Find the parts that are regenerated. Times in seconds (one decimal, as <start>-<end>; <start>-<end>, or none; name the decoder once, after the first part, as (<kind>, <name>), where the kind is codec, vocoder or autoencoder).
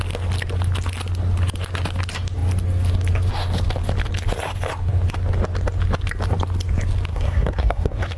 7.1-8.2 (codec, SNAC)